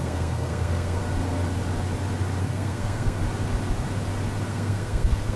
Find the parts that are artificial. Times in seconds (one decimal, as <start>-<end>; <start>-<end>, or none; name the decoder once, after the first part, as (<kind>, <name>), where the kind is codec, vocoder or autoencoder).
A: 0.0-1.0 (codec, SNAC); 2.4-3.2; 4.5-5.4